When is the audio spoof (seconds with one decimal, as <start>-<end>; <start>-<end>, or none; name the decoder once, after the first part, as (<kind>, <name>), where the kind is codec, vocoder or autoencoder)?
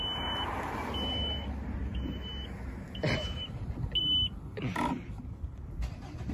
none